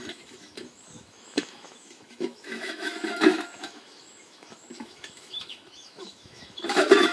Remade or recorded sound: remade